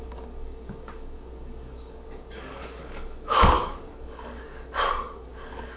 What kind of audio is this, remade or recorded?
remade